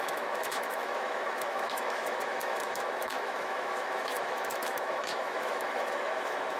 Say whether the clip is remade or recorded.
remade